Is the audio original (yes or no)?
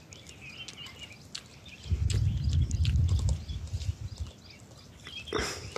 yes